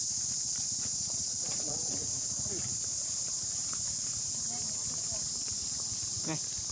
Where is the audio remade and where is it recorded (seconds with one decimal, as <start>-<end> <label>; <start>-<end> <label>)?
0.0-0.9 recorded; 0.9-1.9 remade; 1.9-6.7 recorded